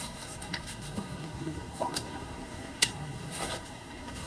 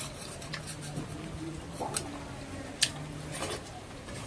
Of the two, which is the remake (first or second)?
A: first